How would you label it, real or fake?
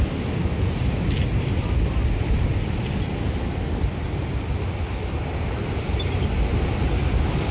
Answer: real